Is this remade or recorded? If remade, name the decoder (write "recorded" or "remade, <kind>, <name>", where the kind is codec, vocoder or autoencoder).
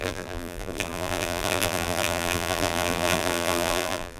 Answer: remade, vocoder, BigVGAN v2